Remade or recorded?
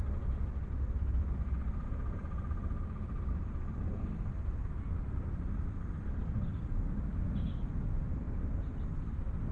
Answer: recorded